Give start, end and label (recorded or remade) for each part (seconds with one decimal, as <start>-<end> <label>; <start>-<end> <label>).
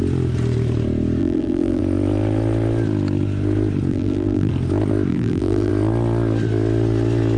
0.0-1.2 recorded; 1.2-1.8 remade; 1.8-3.9 recorded; 3.9-4.5 remade; 4.5-5.1 recorded; 5.1-5.7 remade; 5.7-7.4 recorded